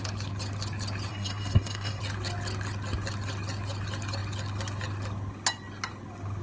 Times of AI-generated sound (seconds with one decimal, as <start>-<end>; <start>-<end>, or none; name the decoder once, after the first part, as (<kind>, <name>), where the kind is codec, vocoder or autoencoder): 1.1-2.0 (codec, SNAC)